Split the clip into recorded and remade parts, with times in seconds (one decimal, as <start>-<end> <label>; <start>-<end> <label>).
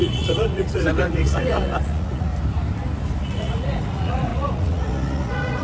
0.0-2.3 remade; 2.3-3.2 recorded; 3.2-5.6 remade